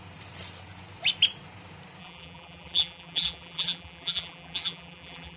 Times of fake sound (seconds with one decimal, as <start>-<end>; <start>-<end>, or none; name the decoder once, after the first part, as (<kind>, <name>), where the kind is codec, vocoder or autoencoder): 2.0-5.4 (vocoder, BigVGAN v2)